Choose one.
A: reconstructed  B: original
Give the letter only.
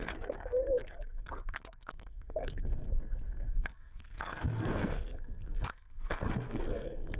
A